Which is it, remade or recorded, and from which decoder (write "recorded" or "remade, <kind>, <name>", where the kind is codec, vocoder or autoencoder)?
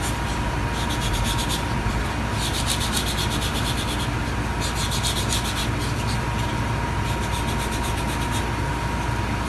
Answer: recorded